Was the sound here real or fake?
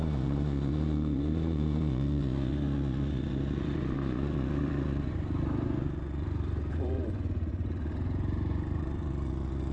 fake